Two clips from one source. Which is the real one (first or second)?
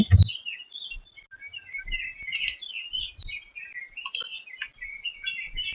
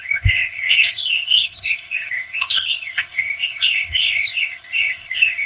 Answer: first